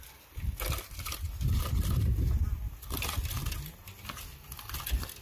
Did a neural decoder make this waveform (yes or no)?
no